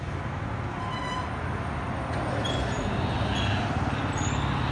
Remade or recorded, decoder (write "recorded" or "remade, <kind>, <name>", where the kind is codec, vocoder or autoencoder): recorded